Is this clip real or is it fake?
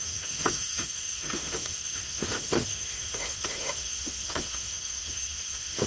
fake